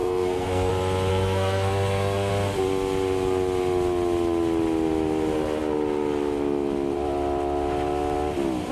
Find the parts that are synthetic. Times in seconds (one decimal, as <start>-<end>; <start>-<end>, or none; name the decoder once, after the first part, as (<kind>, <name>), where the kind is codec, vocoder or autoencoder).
0.0-0.7 (codec, SNAC); 1.1-2.3

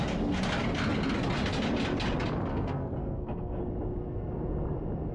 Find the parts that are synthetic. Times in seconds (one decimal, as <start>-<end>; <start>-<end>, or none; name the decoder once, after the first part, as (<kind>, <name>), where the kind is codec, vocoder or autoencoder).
2.5-3.6 (codec, SNAC)